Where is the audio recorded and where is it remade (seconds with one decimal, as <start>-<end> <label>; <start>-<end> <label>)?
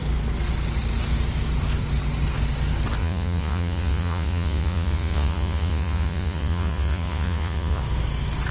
0.0-3.0 recorded; 3.0-7.8 remade; 7.8-8.5 recorded